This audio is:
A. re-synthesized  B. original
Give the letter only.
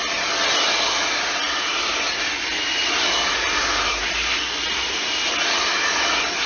B